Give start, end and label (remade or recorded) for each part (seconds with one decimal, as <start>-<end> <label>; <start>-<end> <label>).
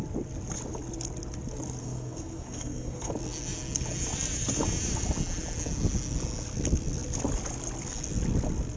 0.0-1.8 recorded; 1.8-3.1 remade; 3.1-8.8 recorded